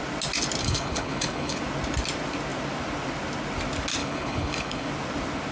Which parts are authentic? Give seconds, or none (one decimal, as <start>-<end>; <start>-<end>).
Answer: 0.0-0.6; 1.6-4.0; 4.9-5.5